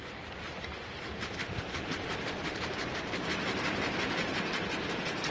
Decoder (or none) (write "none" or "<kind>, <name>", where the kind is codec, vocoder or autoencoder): vocoder, BigVGAN v2